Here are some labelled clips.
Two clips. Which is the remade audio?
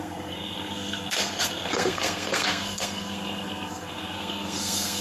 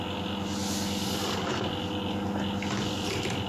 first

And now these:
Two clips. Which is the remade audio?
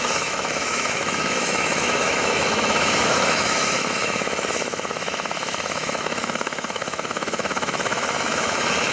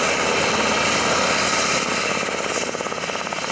first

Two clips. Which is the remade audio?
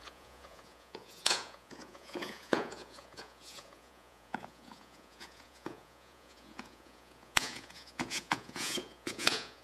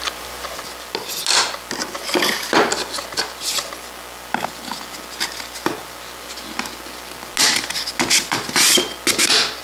first